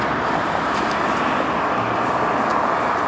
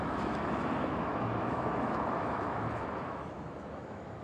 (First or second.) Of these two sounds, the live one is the first